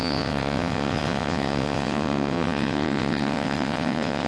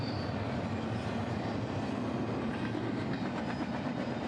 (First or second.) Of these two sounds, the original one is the second